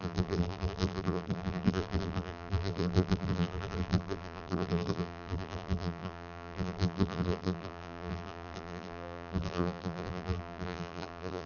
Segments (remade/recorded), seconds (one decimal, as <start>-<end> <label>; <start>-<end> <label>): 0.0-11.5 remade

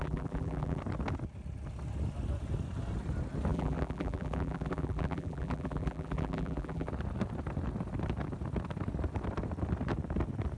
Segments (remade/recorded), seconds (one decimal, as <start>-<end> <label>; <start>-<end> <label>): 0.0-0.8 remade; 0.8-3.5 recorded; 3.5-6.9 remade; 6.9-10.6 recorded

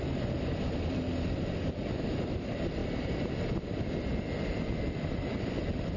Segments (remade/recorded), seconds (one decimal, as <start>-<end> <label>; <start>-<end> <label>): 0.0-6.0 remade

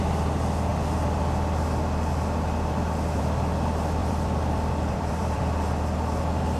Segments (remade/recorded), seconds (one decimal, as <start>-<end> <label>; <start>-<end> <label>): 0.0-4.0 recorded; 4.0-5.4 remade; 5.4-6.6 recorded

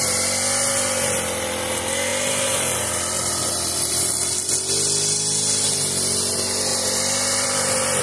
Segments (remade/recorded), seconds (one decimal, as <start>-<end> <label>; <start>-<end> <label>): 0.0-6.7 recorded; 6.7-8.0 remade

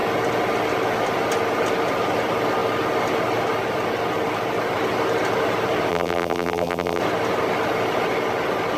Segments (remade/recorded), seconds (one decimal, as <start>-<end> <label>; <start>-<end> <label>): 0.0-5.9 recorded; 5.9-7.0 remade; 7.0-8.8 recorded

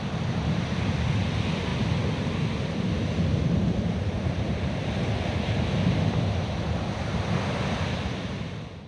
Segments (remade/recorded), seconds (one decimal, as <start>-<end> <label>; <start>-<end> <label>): 0.0-8.9 recorded